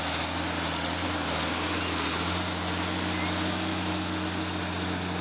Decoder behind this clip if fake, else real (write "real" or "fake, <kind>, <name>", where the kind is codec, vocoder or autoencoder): real